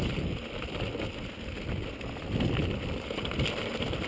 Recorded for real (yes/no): yes